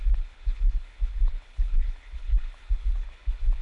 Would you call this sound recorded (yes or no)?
no